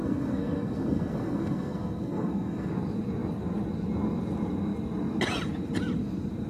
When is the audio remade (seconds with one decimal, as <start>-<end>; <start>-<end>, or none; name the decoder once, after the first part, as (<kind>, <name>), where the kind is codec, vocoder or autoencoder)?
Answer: 0.0-2.7 (codec, SNAC)